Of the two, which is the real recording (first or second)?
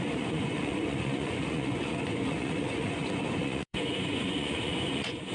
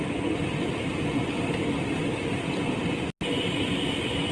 second